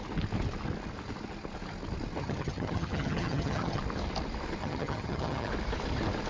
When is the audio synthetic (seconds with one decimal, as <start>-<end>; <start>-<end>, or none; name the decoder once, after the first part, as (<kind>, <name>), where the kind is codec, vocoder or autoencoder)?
2.2-3.8 (vocoder, HiFi-GAN); 4.6-5.5